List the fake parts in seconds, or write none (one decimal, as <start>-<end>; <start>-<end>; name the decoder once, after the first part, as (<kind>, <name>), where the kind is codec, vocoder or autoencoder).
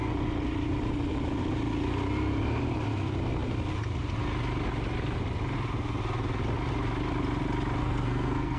7.8-8.6 (codec, SNAC)